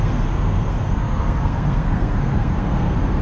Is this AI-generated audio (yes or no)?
yes